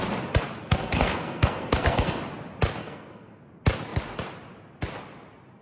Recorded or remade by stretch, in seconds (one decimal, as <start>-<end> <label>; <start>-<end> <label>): 0.0-0.6 recorded; 0.6-2.2 remade; 2.2-2.8 recorded; 2.8-3.4 remade; 3.4-5.6 recorded

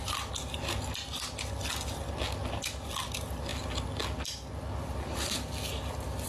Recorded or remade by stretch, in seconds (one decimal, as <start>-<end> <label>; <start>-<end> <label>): 0.0-6.3 recorded

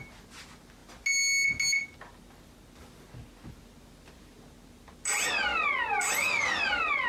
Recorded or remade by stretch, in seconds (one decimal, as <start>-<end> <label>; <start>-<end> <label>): 0.0-7.1 recorded

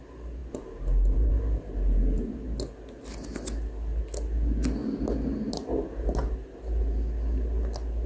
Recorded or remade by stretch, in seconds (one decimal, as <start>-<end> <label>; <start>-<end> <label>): 0.0-8.1 recorded

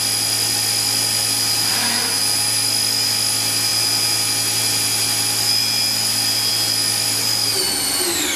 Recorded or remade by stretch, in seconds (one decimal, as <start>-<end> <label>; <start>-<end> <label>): 0.0-8.4 recorded

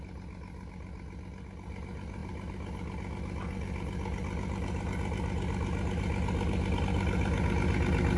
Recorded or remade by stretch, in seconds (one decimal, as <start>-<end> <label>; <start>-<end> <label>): 0.0-8.2 recorded

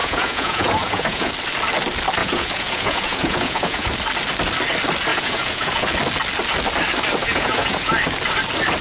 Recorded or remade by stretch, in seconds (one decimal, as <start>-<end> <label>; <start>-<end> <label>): 0.0-1.3 remade; 1.3-2.2 recorded; 2.2-3.9 remade; 3.9-5.1 recorded; 5.1-5.9 remade; 5.9-7.2 recorded; 7.2-7.9 remade; 7.9-8.8 recorded

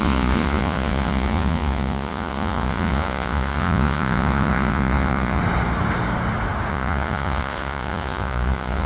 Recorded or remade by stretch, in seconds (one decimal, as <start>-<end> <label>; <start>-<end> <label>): 0.0-5.4 remade; 5.4-6.7 recorded; 6.7-8.9 remade